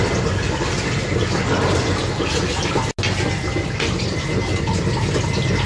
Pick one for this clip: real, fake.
real